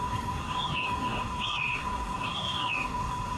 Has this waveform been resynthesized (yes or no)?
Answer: yes